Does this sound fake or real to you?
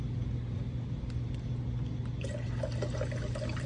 real